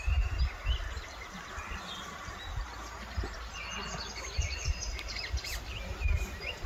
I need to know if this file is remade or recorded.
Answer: recorded